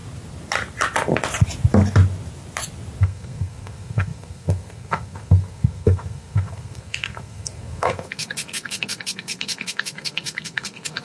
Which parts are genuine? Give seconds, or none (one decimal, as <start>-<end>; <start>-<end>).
0.0-3.0